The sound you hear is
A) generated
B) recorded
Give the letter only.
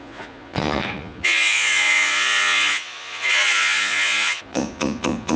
A